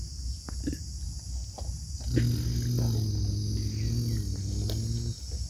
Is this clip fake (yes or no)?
no